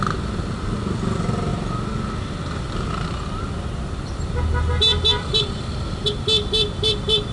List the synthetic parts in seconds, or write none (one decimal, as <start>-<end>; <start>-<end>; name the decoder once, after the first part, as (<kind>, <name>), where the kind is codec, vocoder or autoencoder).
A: none